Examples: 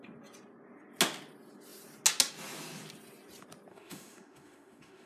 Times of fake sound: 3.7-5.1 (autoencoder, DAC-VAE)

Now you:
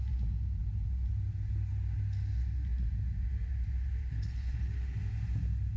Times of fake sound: 4.0-5.0 (codec, HILCodec)

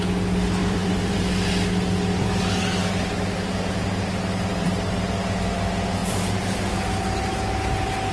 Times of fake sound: 0.6-1.5 (vocoder, BigVGAN v2); 2.8-4.9; 6.0-6.7

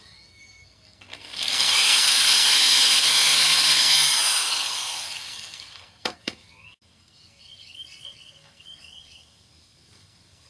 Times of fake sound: 0.0-10.5 (codec, SNAC)

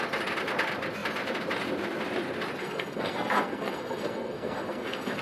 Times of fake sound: 2.6-5.2 (codec, SNAC)

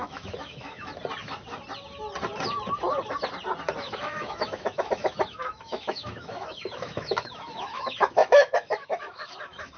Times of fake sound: 0.0-0.9 (autoencoder, DAC-VAE); 3.8-9.8